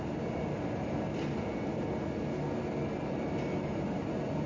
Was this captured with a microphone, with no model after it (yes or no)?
yes